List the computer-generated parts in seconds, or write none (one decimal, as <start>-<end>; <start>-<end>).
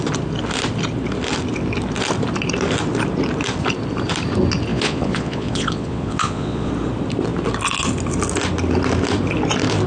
4.7-6.7